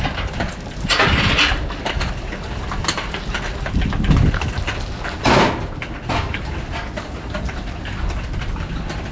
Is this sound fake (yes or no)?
no